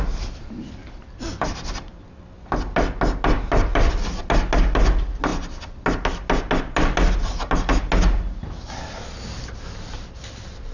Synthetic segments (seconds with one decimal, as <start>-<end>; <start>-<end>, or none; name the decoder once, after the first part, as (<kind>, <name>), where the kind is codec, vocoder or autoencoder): 0.8-1.8 (vocoder, BigVGAN v2); 3.7-4.2